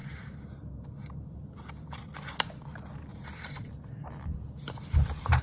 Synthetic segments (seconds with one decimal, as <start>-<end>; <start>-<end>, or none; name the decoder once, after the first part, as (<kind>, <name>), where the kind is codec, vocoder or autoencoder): 0.0-0.7 (vocoder, BigVGAN v2); 3.1-5.4